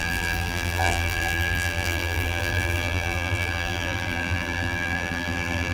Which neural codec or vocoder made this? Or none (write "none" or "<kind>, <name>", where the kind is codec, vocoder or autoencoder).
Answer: vocoder, BigVGAN v2